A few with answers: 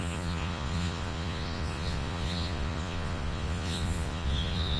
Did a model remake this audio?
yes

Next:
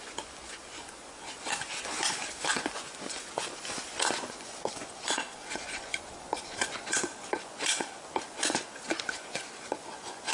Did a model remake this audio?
yes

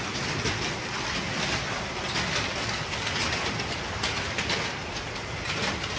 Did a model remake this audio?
no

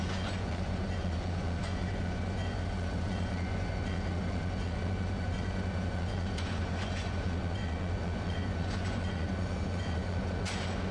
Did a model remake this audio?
yes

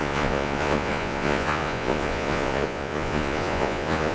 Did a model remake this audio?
yes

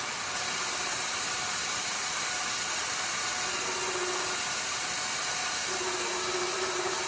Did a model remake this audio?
no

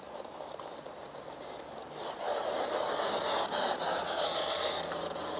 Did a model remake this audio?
no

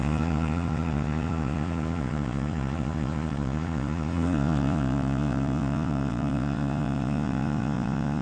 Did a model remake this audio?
yes